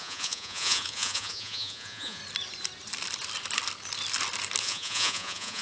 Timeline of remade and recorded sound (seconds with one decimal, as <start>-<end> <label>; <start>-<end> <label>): 0.0-2.2 remade; 2.2-4.6 recorded; 4.6-5.6 remade